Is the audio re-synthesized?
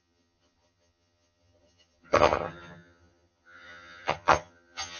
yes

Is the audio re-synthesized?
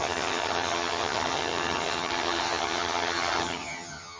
yes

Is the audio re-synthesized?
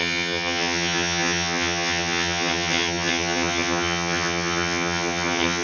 yes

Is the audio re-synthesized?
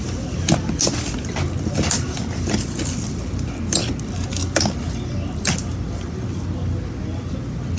no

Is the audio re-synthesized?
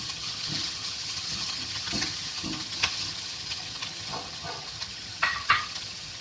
yes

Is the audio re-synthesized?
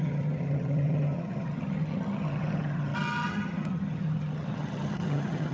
yes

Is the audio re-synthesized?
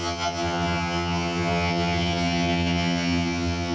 yes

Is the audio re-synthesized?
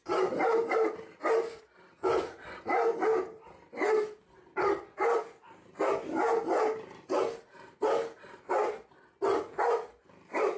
no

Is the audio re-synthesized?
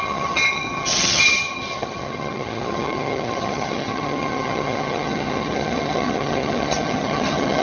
yes